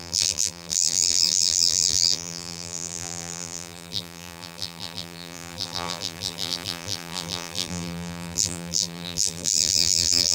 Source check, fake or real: fake